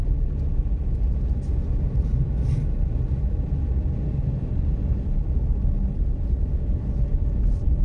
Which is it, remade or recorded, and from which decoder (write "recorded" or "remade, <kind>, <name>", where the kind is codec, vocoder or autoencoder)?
recorded